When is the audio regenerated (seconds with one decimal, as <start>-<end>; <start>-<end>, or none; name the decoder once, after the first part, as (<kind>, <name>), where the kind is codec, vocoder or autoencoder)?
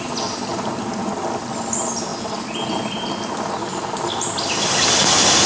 none